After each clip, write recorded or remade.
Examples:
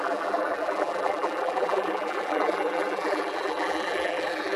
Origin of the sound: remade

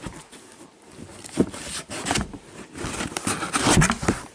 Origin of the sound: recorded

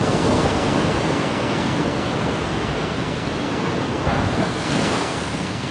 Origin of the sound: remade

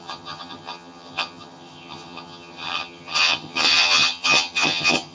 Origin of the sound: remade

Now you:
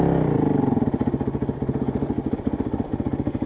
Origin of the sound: recorded